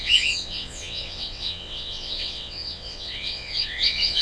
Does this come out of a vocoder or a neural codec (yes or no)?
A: yes